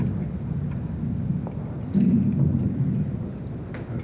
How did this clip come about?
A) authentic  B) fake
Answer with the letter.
A